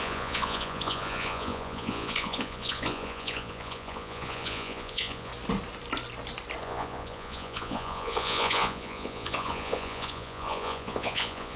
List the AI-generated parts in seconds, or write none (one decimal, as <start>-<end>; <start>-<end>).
0.0-5.3; 6.6-11.6